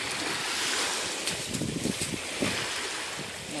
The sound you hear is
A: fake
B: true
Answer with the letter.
B